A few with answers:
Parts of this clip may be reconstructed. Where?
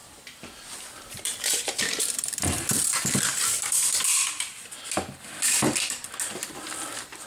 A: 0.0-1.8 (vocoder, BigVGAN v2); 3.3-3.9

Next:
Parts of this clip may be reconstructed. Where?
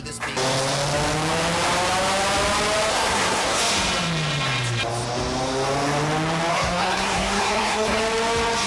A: 2.9-3.6 (codec, SNAC); 6.5-8.0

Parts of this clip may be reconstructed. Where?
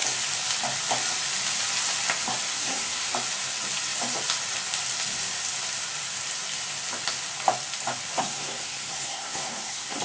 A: 2.5-3.1 (codec, SNAC); 8.2-10.0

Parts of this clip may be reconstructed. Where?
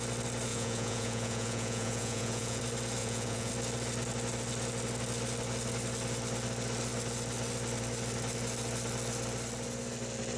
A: 0.5-2.6 (vocoder, Vocos); 3.0-3.5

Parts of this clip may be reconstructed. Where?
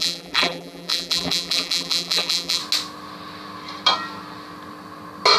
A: 0.0-2.6 (vocoder, BigVGAN v2)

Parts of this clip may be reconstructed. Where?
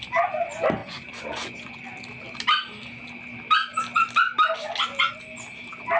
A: 0.8-1.8 (vocoder, Vocos)